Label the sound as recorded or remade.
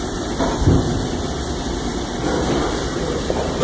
remade